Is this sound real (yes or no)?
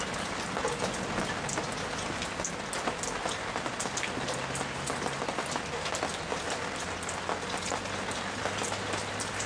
yes